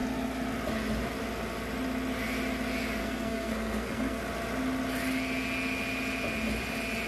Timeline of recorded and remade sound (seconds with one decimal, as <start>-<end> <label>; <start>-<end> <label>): 0.0-3.0 recorded; 3.0-4.2 remade; 4.2-7.1 recorded